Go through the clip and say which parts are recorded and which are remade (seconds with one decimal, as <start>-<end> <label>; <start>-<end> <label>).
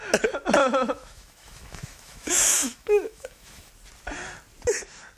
0.0-0.6 recorded; 0.6-3.7 remade; 3.7-5.2 recorded